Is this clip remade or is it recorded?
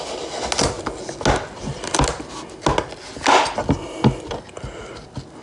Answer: recorded